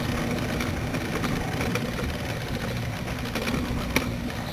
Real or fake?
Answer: real